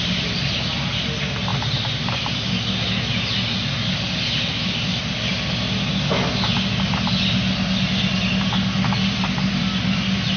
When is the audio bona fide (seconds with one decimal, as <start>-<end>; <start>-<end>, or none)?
0.0-10.4

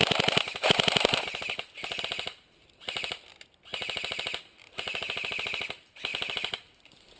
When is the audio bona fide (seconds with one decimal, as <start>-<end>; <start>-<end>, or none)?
2.0-2.6; 3.3-6.1

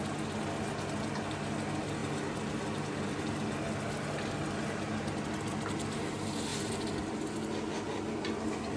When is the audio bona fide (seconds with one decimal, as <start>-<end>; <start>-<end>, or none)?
0.0-8.8